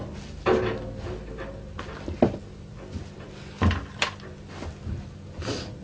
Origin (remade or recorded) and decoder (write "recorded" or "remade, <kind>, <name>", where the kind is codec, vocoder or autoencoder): recorded